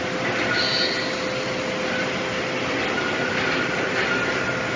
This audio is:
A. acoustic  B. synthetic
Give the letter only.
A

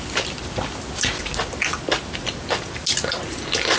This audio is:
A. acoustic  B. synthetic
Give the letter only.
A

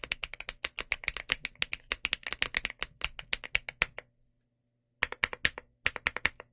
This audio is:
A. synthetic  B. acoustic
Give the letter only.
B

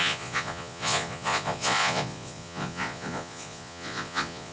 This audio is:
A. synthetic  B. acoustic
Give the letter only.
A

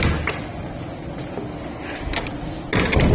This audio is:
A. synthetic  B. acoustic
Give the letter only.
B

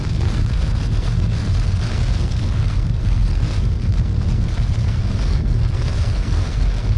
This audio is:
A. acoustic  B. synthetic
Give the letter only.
B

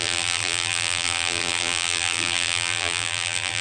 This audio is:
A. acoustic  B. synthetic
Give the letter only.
B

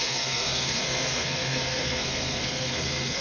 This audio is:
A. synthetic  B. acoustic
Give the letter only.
A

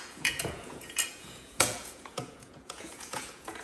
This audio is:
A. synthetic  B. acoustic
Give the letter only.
A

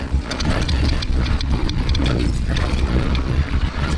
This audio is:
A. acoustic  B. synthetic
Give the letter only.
B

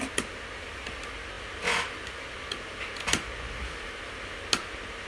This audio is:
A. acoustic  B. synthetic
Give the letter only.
A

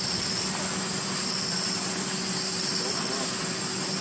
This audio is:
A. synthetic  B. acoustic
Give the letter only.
B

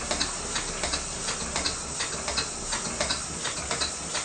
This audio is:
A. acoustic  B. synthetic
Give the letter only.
A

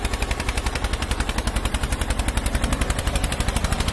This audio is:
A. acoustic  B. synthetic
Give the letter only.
B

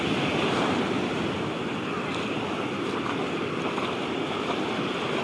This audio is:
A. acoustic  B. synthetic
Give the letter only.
A